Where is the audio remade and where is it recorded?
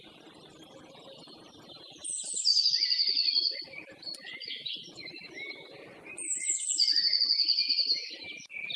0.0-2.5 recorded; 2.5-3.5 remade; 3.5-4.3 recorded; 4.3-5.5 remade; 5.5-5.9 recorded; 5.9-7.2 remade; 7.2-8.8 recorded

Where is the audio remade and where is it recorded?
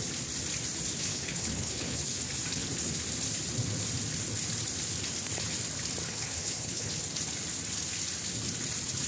0.0-1.1 recorded; 1.1-2.2 remade; 2.2-6.0 recorded; 6.0-6.9 remade; 6.9-9.1 recorded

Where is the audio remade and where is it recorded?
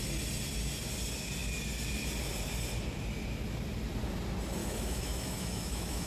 0.0-4.6 recorded; 4.6-6.1 remade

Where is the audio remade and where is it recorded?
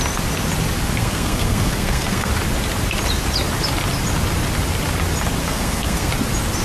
0.0-1.0 recorded; 1.0-2.3 remade; 2.3-5.4 recorded; 5.4-6.1 remade; 6.1-6.6 recorded